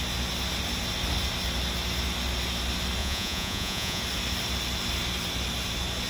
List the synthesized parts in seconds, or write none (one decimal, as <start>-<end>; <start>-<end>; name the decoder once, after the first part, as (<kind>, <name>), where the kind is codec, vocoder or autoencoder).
3.0-4.0 (vocoder, Vocos)